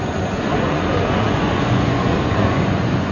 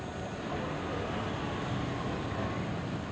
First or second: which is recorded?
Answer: second